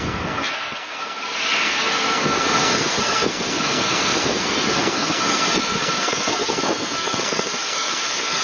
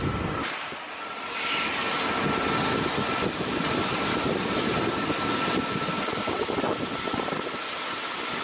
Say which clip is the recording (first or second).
second